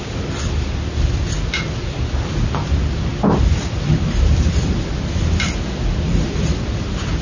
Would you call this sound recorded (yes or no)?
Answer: yes